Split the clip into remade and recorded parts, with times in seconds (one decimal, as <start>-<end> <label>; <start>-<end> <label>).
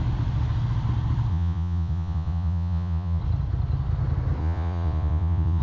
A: 0.0-1.3 recorded; 1.3-3.2 remade; 3.2-4.4 recorded; 4.4-5.6 remade